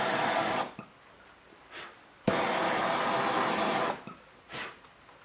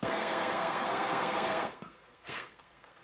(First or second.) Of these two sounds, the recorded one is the first